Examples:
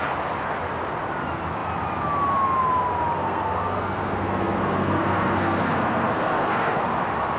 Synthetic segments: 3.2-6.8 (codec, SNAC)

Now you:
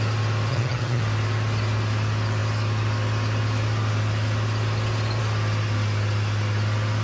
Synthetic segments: 0.5-1.0 (vocoder, HiFi-GAN)

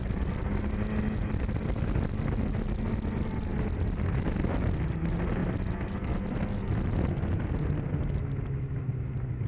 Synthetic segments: none

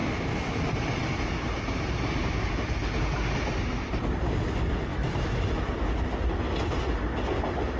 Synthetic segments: 0.0-0.6 (autoencoder, DAC-VAE); 4.9-5.7